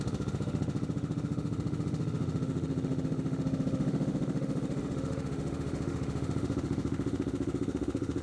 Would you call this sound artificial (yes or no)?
yes